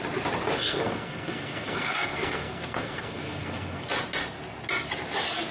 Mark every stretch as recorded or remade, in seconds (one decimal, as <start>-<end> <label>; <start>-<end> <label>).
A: 0.0-0.6 recorded; 0.6-3.9 remade; 3.9-5.5 recorded